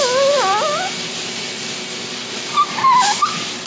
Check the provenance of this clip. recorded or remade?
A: recorded